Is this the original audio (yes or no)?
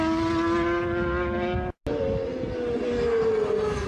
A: yes